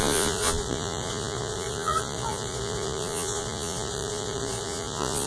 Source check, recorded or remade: remade